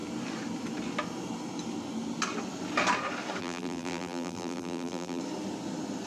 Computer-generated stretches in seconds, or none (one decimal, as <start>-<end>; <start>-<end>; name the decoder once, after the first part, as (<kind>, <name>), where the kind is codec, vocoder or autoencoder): 3.4-5.2 (vocoder, BigVGAN v2)